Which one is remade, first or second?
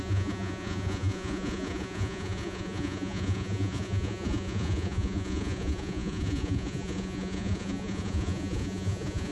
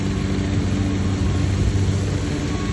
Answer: first